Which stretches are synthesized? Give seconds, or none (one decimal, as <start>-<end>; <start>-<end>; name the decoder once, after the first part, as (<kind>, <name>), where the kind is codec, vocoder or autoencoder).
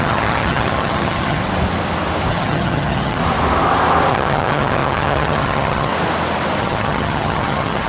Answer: 0.0-1.4 (vocoder, HiFi-GAN); 2.3-3.2; 4.1-5.9; 6.6-7.9